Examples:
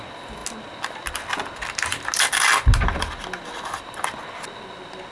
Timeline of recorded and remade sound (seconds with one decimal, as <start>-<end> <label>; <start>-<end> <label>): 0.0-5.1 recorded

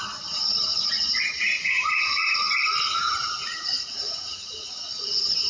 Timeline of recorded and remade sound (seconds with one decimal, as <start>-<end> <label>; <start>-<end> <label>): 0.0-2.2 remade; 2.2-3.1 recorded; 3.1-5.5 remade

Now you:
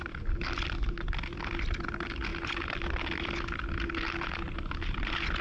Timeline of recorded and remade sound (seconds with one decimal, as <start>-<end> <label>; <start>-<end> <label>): 0.0-5.4 recorded

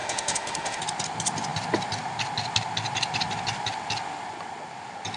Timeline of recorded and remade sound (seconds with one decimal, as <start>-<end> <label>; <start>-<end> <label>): 0.0-0.8 remade; 0.8-5.2 recorded

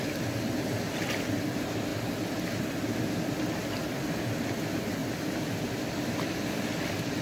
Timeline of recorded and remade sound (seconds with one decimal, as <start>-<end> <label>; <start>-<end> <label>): 0.0-7.2 recorded

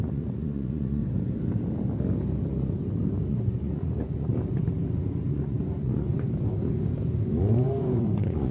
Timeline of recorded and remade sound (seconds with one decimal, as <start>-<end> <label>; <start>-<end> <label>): 0.0-1.0 remade; 1.0-3.3 recorded; 3.3-4.3 remade; 4.3-5.3 recorded; 5.3-6.1 remade; 6.1-7.4 recorded; 7.4-8.5 remade